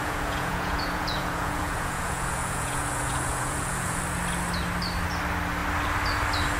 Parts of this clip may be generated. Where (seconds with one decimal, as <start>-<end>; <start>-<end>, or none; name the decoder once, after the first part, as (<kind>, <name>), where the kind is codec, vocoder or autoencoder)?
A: 0.0-4.0 (vocoder, Vocos)